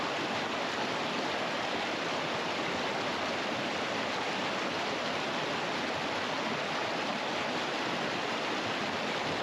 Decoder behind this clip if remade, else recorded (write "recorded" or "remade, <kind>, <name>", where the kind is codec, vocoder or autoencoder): recorded